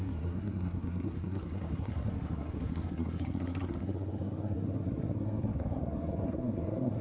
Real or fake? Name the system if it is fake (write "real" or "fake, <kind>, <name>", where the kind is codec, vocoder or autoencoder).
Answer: fake, codec, SNAC